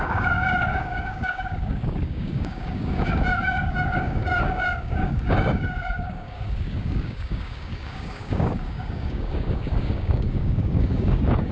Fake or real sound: fake